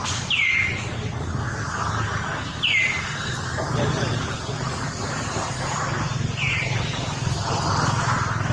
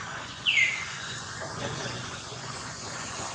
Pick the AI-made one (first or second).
second